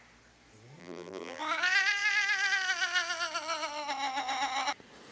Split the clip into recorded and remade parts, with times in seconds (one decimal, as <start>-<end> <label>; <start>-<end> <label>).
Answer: 0.0-0.8 recorded; 0.8-1.4 remade; 1.4-5.1 recorded

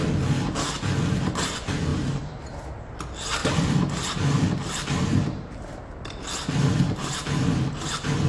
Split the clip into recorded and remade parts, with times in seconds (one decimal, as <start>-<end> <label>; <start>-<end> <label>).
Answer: 0.0-1.9 recorded; 1.9-2.5 remade; 2.5-8.3 recorded